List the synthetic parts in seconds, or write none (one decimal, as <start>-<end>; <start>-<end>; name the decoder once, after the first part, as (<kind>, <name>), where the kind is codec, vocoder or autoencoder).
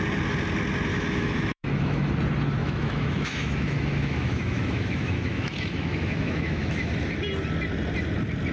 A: 0.9-2.1 (autoencoder, DAC-VAE); 2.6-6.9